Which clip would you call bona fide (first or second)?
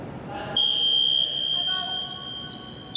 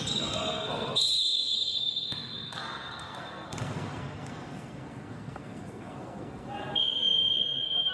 first